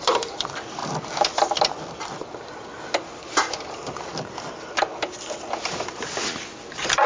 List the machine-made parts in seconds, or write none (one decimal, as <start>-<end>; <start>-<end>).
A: none